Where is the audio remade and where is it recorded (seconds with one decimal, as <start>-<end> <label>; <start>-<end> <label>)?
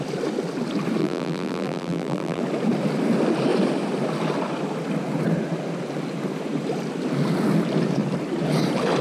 0.0-1.0 recorded; 1.0-2.4 remade; 2.4-9.0 recorded